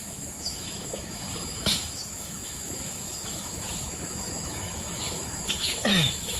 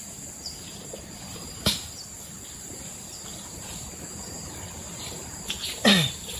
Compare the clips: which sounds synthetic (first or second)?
first